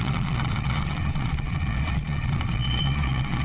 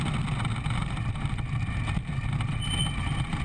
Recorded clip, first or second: second